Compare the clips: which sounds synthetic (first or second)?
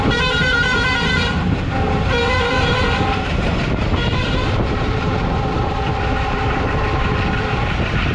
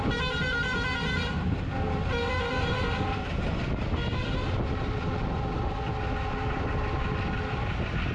first